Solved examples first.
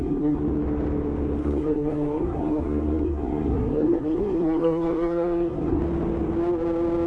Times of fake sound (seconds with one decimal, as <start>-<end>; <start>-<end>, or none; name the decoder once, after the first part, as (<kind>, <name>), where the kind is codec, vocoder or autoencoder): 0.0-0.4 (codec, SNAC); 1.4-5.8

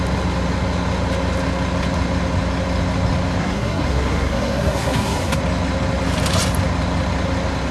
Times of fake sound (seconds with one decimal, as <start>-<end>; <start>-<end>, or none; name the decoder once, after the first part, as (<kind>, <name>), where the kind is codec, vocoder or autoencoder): 3.4-5.4 (codec, SNAC)

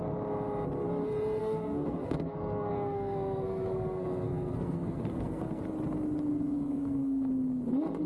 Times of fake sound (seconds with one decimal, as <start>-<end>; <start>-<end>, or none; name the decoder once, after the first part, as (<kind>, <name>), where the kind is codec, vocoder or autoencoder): 1.4-5.6 (codec, SNAC); 6.3-7.3

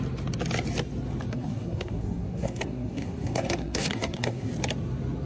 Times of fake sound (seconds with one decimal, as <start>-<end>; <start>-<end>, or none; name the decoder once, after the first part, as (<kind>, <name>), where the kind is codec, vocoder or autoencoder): 1.3-4.5 (codec, SNAC)